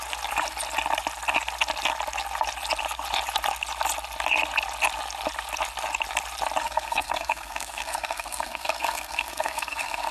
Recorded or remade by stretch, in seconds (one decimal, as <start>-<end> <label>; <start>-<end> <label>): 0.0-6.6 recorded; 6.6-10.1 remade